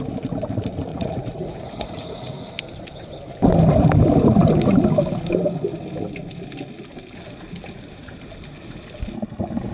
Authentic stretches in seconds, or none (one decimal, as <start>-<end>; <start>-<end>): 0.0-0.9; 2.5-9.7

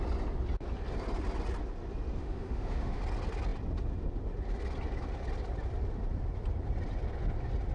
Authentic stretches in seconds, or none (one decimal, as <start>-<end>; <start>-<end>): 0.0-2.2; 3.0-7.7